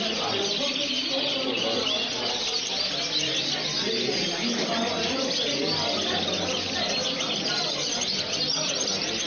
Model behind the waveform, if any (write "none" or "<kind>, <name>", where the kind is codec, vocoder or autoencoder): none